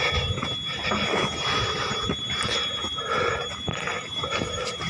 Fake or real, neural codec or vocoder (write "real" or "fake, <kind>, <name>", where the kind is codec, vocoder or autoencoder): real